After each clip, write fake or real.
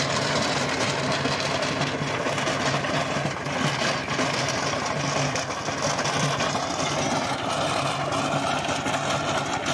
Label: real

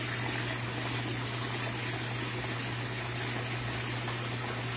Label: real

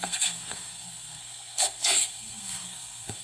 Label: fake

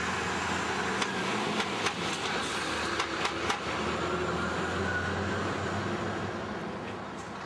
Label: real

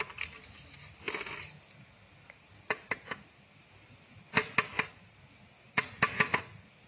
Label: real